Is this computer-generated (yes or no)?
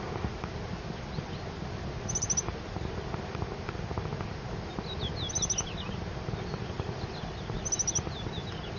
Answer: no